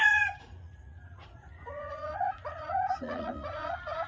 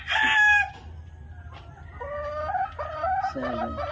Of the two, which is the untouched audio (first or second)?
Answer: second